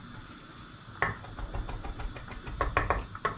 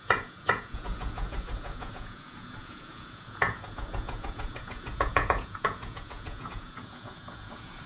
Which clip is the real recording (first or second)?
first